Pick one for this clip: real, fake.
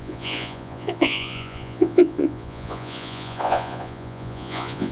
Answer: fake